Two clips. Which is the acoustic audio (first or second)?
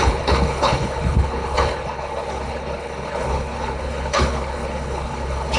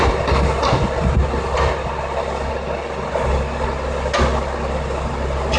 second